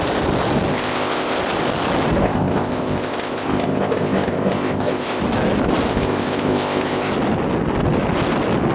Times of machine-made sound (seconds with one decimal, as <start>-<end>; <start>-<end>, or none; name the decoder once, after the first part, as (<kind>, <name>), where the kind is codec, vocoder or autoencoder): 0.7-1.4 (codec, ZipCodec); 2.2-5.2; 5.9-7.1